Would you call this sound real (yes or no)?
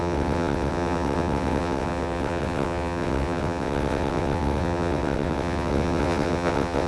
no